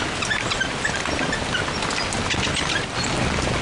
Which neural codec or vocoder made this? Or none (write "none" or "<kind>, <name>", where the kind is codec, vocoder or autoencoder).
none